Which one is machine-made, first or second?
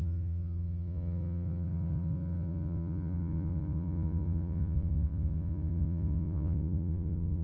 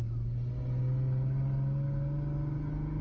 first